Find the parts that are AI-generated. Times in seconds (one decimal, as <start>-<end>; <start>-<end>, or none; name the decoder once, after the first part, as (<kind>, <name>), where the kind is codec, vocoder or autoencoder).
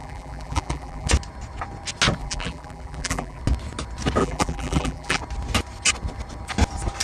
0.0-1.1 (vocoder, BigVGAN v2); 2.2-3.4; 4.2-5.2